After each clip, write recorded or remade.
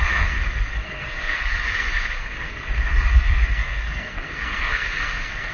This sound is remade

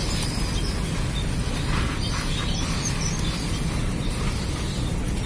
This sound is recorded